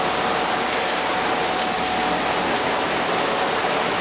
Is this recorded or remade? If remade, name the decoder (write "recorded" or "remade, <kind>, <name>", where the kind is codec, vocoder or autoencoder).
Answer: recorded